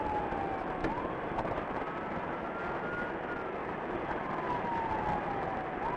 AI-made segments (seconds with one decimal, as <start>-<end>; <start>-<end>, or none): 0.8-1.8; 3.6-4.9